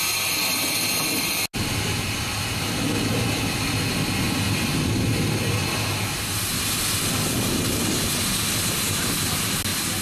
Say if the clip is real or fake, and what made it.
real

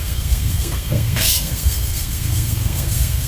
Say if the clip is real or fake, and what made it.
fake, codec, SNAC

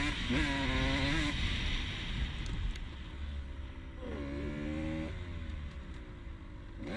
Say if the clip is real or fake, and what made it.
real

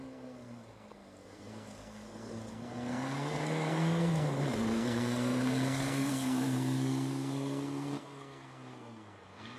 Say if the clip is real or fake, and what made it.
fake, codec, SNAC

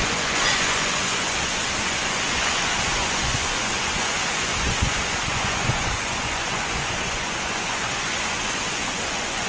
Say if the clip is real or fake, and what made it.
fake, vocoder, Vocos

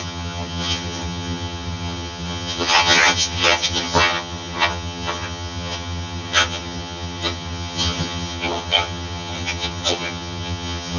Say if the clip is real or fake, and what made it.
fake, vocoder, HiFi-GAN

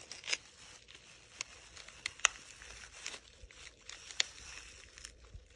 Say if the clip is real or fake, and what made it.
real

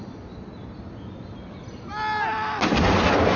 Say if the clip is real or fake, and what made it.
real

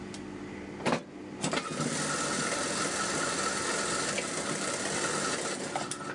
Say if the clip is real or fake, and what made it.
real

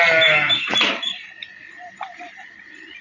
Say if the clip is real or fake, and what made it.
real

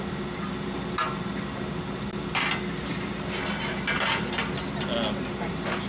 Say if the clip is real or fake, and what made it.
real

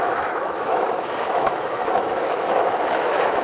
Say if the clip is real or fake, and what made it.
fake, autoencoder, DAC-VAE